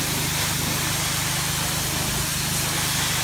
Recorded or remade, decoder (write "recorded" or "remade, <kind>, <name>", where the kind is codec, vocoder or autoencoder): recorded